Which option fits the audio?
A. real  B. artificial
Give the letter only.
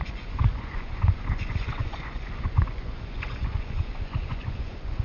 B